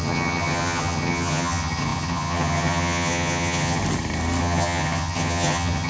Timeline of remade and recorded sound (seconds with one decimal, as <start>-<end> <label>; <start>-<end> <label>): 0.0-3.8 remade; 3.8-4.4 recorded; 4.4-5.9 remade